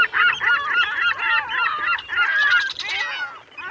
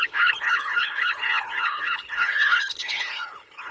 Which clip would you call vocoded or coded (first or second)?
second